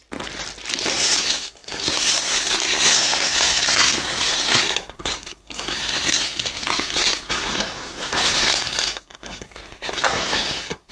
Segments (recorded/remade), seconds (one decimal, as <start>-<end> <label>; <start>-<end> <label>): 0.0-0.9 recorded; 0.9-10.9 remade